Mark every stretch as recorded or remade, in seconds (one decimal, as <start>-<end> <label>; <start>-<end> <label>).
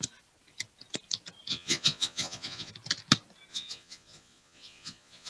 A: 0.0-1.5 recorded; 1.5-2.7 remade; 2.7-3.5 recorded; 3.5-5.3 remade